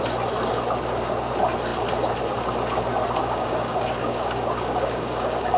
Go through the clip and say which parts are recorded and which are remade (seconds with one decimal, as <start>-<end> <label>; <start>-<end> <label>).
0.0-3.2 recorded; 3.2-5.6 remade